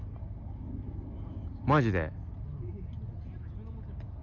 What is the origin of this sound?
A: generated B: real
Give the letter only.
B